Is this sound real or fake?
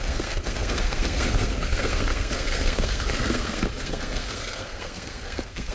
fake